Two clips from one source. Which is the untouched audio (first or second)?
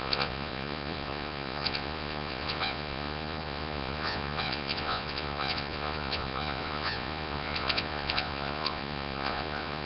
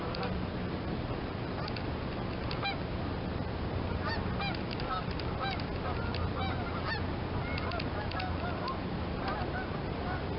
second